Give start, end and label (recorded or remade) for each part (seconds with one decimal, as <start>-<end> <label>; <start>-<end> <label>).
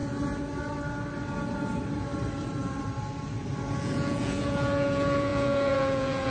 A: 0.0-3.8 recorded; 3.8-6.3 remade